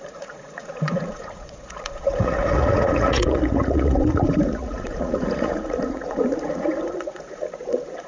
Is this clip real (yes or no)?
no